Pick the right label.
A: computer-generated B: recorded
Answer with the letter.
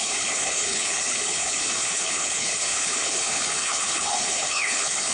A